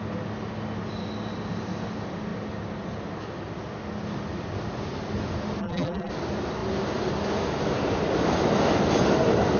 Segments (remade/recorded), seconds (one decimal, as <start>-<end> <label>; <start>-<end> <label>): 0.0-5.6 recorded; 5.6-6.1 remade; 6.1-9.6 recorded